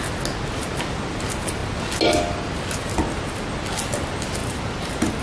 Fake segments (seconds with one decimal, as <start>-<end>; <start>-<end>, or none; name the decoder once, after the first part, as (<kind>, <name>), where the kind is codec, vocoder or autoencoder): 4.4-5.2 (vocoder, BigVGAN v2)